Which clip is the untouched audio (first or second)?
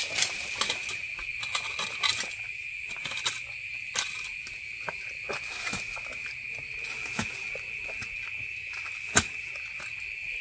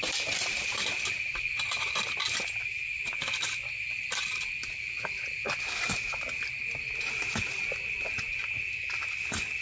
first